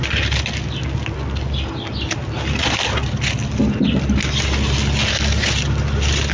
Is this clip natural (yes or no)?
yes